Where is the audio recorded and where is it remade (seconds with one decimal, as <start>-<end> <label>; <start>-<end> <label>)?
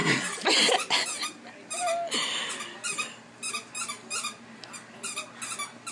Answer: 0.0-5.9 recorded